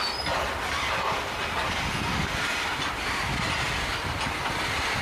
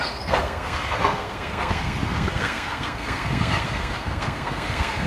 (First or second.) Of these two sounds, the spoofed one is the second